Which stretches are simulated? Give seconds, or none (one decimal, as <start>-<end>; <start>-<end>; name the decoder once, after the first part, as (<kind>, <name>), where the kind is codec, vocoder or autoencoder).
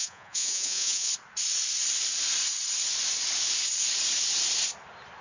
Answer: 0.0-1.1 (vocoder, Vocos)